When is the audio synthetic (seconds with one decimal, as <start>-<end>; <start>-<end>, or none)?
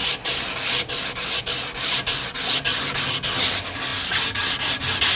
none